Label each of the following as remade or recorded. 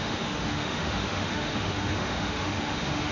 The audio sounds remade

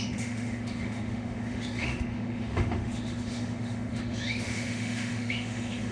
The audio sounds remade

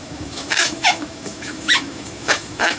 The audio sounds remade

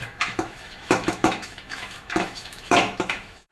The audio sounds remade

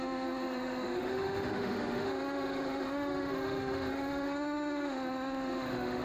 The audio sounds remade